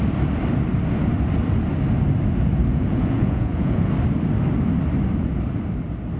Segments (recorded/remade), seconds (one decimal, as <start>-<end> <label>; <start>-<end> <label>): 0.0-2.7 recorded; 2.7-3.9 remade; 3.9-6.2 recorded